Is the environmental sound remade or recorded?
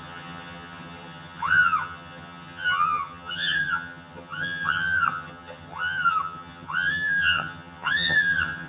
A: remade